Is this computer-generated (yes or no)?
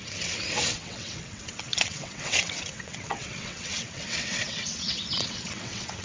yes